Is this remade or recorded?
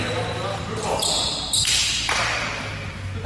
recorded